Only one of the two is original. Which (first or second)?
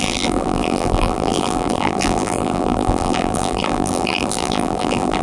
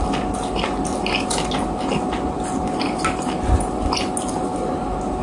second